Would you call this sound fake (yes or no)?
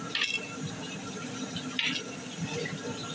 no